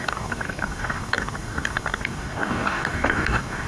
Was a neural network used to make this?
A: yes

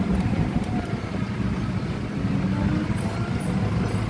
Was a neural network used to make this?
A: no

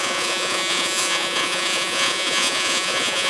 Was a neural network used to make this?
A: yes